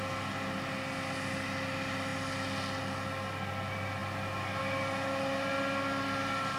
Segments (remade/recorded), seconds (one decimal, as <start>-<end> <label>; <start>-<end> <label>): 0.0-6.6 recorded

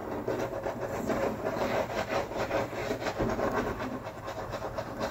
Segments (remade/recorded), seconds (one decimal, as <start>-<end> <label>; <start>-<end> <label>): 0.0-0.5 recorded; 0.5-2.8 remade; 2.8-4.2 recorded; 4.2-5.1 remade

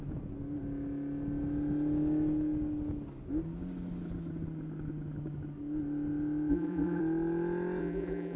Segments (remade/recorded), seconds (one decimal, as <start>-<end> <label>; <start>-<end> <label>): 0.0-6.5 recorded; 6.5-7.0 remade; 7.0-7.8 recorded; 7.8-8.4 remade

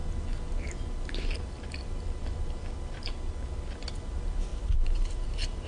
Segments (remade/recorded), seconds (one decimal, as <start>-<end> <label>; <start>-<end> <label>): 0.0-4.5 recorded; 4.5-5.3 remade; 5.3-5.7 recorded

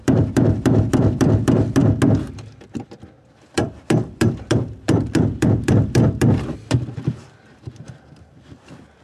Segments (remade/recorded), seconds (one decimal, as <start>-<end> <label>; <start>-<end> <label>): 0.0-1.8 remade; 1.8-3.3 recorded; 3.3-9.0 remade